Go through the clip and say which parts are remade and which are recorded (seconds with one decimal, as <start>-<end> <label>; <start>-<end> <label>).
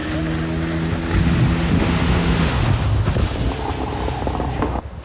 0.0-1.7 recorded; 1.7-2.6 remade; 2.6-4.6 recorded; 4.6-5.0 remade